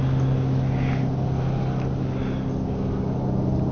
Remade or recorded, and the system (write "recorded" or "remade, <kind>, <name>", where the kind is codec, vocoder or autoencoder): recorded